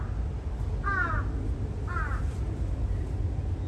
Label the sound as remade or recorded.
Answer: recorded